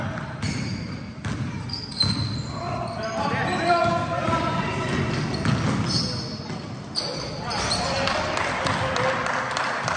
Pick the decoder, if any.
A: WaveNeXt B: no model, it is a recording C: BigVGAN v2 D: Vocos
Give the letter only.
B